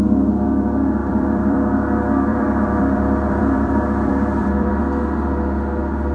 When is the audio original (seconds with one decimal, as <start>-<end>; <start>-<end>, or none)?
0.0-1.0; 1.7-2.3; 4.7-6.1